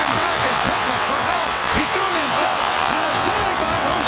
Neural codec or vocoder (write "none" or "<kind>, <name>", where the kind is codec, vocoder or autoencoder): vocoder, WaveNeXt